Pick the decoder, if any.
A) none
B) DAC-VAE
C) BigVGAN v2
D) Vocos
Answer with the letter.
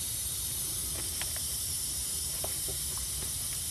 C